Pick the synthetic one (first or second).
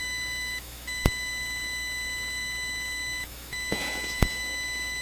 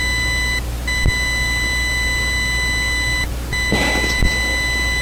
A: first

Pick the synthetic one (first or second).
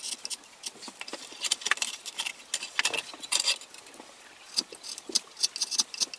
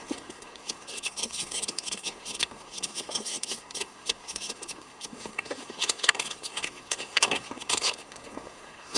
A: second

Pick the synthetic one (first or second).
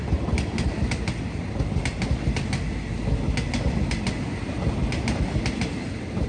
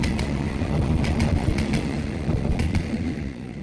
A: second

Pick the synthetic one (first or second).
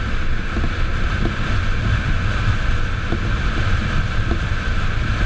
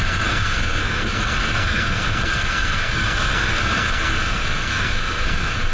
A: second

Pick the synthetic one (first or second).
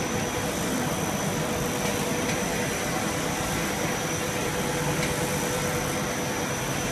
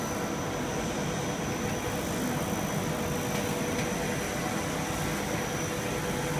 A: first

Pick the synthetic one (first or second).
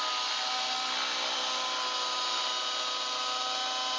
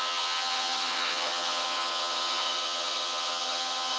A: second